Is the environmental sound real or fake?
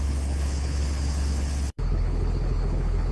fake